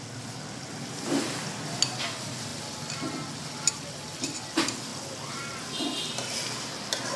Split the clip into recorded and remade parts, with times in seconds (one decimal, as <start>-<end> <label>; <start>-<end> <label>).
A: 0.0-7.2 recorded